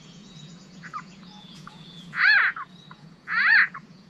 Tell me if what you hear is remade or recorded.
remade